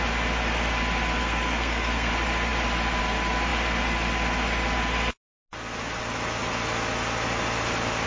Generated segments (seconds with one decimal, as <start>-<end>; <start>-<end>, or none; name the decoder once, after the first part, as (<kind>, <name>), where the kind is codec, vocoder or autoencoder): 1.2-2.1 (codec, SNAC)

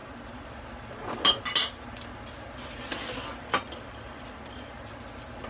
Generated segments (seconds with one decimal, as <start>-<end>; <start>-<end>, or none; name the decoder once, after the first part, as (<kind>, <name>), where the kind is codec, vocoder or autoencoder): none

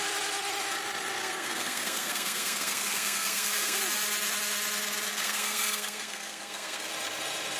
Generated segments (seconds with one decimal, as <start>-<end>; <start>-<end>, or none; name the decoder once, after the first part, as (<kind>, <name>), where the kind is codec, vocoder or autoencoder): 1.2-3.8 (codec, SNAC); 5.1-6.9

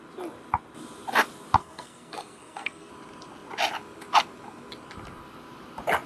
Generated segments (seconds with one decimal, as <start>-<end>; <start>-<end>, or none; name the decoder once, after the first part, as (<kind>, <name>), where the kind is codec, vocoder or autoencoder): 1.6-2.9 (codec, SNAC)

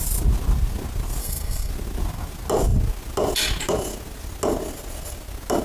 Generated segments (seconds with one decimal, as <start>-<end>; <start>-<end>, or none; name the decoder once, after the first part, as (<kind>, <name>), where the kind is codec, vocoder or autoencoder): 1.2-1.7 (codec, SNAC)

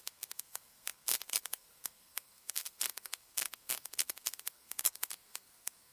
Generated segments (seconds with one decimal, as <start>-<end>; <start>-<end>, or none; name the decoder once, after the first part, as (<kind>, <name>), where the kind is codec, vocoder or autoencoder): 0.0-5.9 (codec, SNAC)

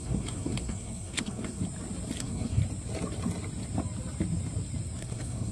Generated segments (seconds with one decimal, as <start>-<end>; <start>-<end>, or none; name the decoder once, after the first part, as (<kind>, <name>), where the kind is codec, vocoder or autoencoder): 0.0-1.6 (codec, SNAC); 2.2-2.6; 5.0-5.5

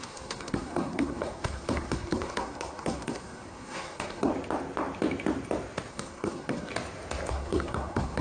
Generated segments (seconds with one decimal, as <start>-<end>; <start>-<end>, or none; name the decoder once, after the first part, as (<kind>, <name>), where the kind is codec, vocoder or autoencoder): 0.0-4.3 (codec, SNAC); 5.9-6.7; 7.3-8.2